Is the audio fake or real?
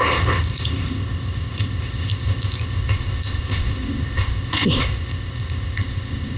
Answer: fake